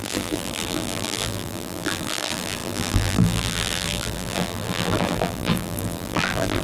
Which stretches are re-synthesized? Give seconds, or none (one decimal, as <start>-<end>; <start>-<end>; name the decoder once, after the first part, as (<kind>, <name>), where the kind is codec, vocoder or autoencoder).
0.0-6.6 (vocoder, BigVGAN v2)